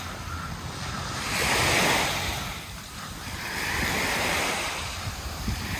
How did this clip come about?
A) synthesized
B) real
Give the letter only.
B